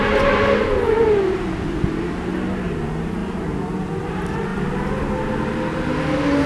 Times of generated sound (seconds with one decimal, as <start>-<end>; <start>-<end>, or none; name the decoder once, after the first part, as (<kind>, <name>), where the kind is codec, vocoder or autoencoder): none